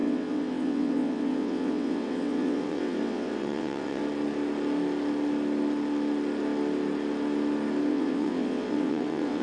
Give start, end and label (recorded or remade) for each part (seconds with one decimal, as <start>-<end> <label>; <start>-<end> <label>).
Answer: 0.0-4.0 remade; 4.0-7.9 recorded; 7.9-9.4 remade